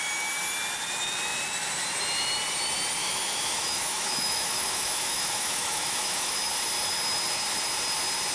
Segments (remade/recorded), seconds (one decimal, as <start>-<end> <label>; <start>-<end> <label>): 0.0-3.0 recorded; 3.0-6.5 remade; 6.5-8.3 recorded